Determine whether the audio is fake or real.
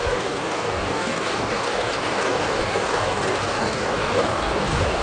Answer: fake